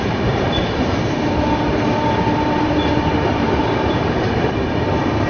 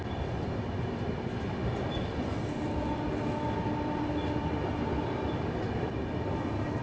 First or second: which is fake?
first